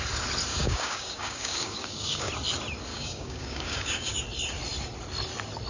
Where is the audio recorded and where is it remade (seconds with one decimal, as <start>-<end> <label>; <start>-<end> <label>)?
0.0-0.5 recorded; 0.5-2.3 remade; 2.3-2.9 recorded; 2.9-4.2 remade; 4.2-5.7 recorded